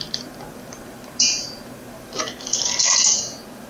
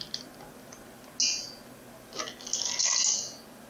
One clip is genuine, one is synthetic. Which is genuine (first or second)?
second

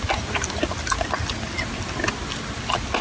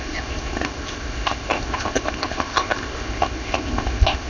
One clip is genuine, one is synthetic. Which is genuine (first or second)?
first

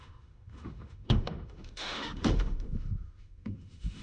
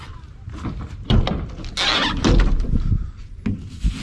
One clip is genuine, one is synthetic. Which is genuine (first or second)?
second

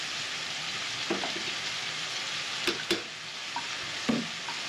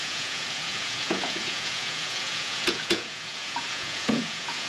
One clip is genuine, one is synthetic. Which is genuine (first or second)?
first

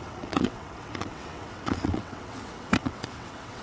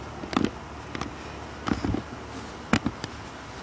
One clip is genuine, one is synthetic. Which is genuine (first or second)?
second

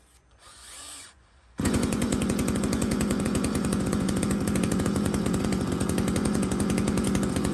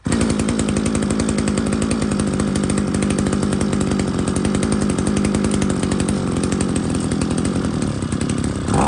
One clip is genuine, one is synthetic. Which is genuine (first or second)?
second